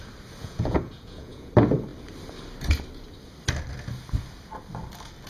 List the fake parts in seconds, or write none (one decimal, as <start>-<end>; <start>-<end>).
0.4-1.5